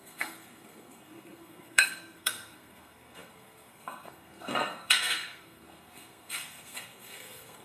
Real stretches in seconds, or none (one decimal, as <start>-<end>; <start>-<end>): none